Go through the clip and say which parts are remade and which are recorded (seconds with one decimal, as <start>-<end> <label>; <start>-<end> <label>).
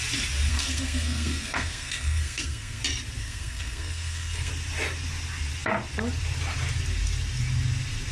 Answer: 0.0-0.5 recorded; 0.5-2.8 remade; 2.8-3.2 recorded; 3.2-4.5 remade; 4.5-8.1 recorded